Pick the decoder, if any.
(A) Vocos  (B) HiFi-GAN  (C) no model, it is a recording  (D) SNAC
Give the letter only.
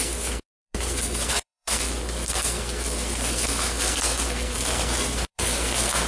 D